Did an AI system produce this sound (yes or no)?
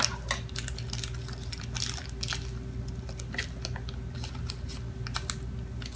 no